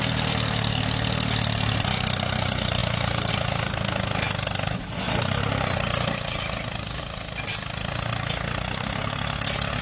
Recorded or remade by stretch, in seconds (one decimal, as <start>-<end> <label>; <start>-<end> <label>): 0.0-9.8 recorded